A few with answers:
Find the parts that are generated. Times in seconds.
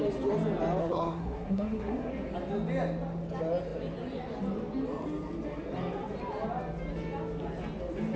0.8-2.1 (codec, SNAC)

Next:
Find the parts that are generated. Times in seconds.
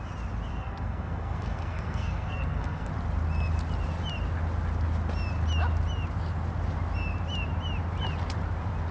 0.5-2.9 (codec, SNAC)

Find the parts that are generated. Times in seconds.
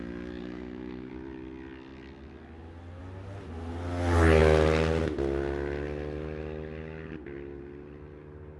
0.4-1.1 (codec, SNAC)